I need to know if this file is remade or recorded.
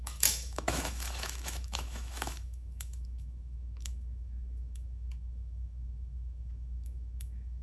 remade